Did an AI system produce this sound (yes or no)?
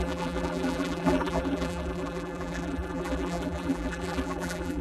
yes